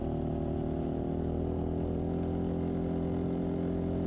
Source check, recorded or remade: recorded